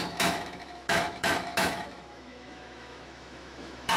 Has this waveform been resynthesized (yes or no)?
yes